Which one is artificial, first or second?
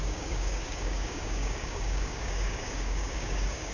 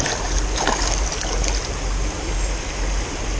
first